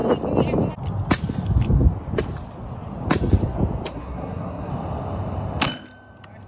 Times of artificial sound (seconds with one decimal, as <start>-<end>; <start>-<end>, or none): 3.9-4.7